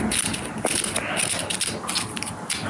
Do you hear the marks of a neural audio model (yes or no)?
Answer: no